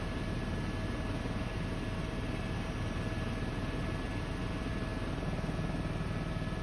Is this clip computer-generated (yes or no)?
no